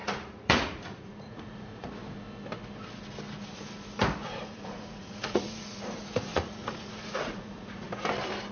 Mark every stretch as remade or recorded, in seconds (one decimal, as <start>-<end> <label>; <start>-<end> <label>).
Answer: 0.0-1.9 remade; 1.9-4.2 recorded; 4.2-7.9 remade; 7.9-8.5 recorded